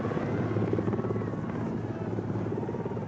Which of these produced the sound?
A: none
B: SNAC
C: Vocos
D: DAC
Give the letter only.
A